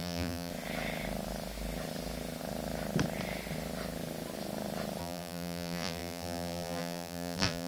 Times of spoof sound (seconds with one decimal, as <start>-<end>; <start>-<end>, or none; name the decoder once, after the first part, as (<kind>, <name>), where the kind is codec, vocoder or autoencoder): 0.0-0.5 (vocoder, BigVGAN v2); 5.0-7.7